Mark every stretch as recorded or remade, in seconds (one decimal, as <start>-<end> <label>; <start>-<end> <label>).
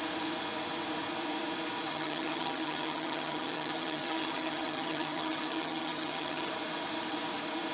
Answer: 0.0-1.9 recorded; 1.9-6.5 remade; 6.5-7.7 recorded